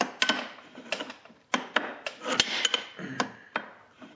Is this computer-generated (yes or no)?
no